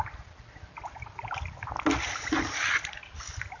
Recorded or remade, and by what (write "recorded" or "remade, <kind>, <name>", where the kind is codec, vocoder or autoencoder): recorded